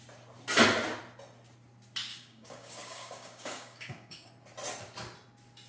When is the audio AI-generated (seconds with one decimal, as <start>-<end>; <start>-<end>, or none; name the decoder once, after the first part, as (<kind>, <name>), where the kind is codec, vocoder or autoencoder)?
2.1-4.3 (codec, DAC)